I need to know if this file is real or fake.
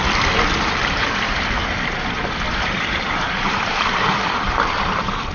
fake